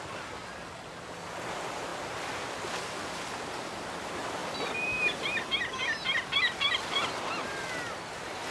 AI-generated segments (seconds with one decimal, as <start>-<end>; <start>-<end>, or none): none